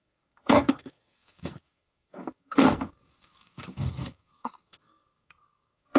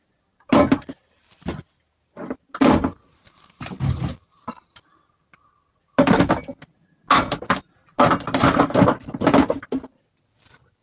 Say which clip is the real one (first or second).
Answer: second